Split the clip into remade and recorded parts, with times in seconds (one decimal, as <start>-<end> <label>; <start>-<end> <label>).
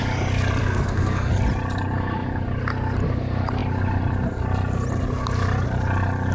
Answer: 0.0-0.6 recorded; 0.6-1.3 remade; 1.3-6.3 recorded